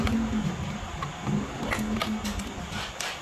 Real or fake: real